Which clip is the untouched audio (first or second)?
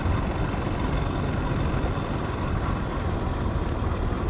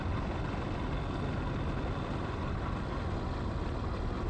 second